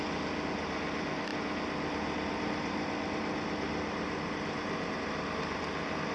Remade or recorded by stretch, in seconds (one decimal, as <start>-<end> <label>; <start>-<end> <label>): 0.0-6.1 recorded